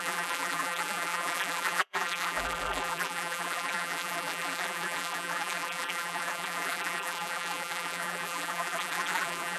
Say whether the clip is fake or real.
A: fake